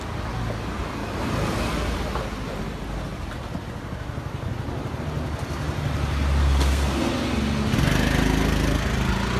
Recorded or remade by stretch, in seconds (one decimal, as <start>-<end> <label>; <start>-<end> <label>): 0.0-6.4 recorded; 6.4-7.1 remade; 7.1-9.4 recorded